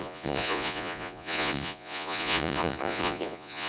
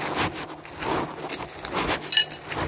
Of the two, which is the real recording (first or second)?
second